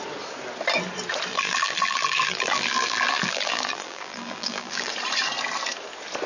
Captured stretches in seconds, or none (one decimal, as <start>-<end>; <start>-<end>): 0.0-1.3; 4.9-6.3